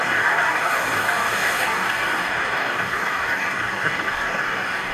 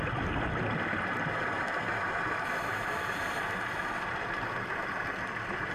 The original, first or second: second